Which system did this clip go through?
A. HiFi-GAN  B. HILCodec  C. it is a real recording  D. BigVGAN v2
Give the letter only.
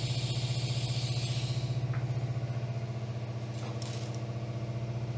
C